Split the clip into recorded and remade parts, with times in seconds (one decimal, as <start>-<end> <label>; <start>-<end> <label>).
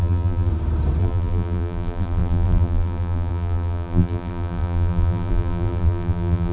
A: 0.0-0.5 remade; 0.5-1.0 recorded; 1.0-6.5 remade